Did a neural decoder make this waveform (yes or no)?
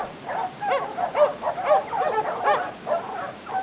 no